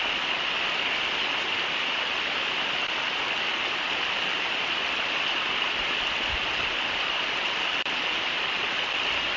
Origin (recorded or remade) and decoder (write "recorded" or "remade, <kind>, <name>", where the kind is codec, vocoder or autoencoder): recorded